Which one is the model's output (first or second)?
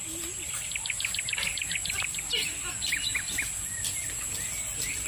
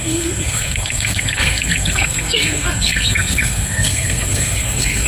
second